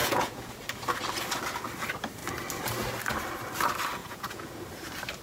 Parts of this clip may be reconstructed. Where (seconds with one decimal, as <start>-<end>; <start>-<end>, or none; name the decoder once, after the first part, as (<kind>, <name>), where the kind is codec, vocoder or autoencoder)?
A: 0.0-0.5 (vocoder, Vocos); 4.0-4.5